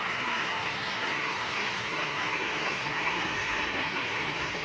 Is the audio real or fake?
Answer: fake